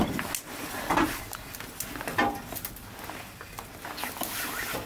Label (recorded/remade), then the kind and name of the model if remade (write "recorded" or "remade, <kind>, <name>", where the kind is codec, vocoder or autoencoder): recorded